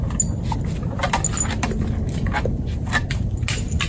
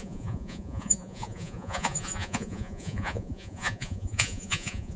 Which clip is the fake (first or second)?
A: second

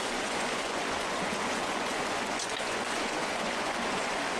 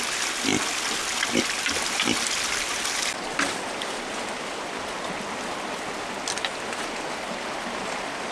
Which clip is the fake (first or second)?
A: first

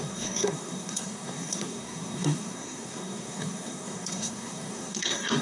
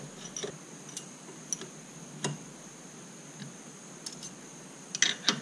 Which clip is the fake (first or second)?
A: first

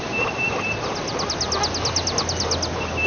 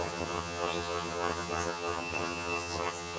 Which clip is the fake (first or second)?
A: second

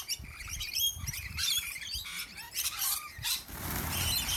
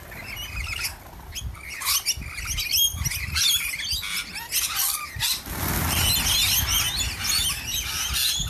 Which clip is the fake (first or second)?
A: first